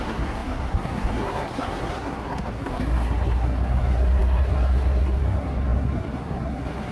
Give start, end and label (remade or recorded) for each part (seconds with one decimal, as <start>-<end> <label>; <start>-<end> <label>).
0.0-6.9 remade